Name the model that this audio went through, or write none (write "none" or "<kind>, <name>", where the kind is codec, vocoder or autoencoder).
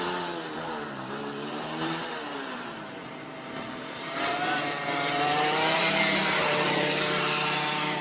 vocoder, BigVGAN v2